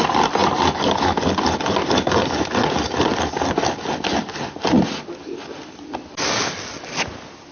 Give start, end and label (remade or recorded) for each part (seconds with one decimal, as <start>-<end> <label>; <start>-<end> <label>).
0.0-7.5 recorded